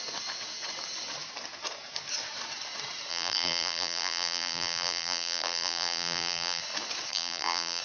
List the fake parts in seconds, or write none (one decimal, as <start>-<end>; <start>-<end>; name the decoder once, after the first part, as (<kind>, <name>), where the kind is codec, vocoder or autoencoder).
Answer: 3.1-6.6 (vocoder, BigVGAN v2); 7.1-7.8